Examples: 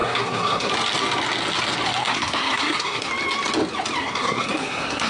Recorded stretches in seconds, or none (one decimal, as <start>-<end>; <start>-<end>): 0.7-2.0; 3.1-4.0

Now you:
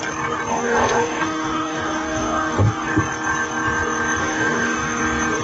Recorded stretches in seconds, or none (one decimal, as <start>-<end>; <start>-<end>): 0.0-0.5; 2.9-4.2; 5.0-5.4

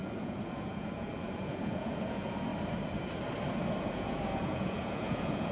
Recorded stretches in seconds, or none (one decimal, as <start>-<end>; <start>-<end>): 2.5-3.8